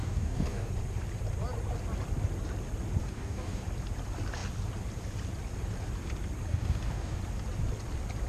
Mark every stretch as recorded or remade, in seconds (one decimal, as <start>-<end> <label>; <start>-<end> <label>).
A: 0.0-0.7 remade; 0.7-3.0 recorded; 3.0-3.6 remade; 3.6-6.5 recorded; 6.5-7.2 remade; 7.2-8.3 recorded